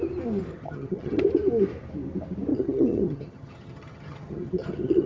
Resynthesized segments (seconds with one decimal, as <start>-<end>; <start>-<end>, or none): 0.5-1.2; 2.5-5.1